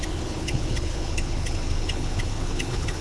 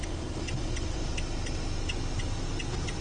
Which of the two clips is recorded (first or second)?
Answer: second